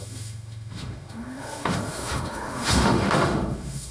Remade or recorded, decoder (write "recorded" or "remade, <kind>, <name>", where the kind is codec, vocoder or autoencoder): remade, autoencoder, DAC-VAE